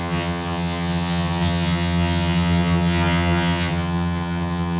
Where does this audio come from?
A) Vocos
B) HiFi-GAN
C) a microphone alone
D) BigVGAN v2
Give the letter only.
B